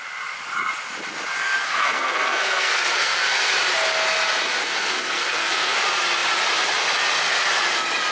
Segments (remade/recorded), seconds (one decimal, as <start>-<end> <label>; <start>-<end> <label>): 0.0-1.4 recorded; 1.4-3.5 remade; 3.5-4.6 recorded; 4.6-5.8 remade; 5.8-8.1 recorded